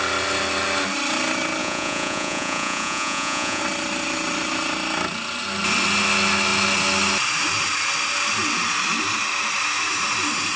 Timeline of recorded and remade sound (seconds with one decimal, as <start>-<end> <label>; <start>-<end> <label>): 0.0-1.6 recorded; 1.6-3.6 remade; 3.6-10.6 recorded